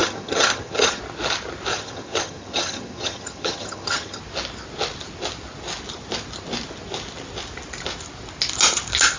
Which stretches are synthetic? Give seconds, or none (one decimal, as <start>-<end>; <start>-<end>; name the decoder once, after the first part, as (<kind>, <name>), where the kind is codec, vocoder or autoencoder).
0.0-1.0 (vocoder, HiFi-GAN); 1.7-4.2